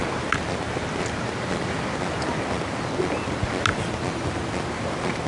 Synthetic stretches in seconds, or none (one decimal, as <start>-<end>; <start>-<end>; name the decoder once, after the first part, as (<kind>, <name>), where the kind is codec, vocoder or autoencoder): none